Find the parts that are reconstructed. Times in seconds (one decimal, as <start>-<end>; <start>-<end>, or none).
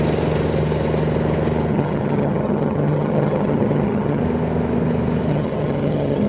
1.7-4.2; 5.3-6.3